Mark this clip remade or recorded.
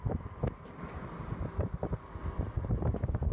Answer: recorded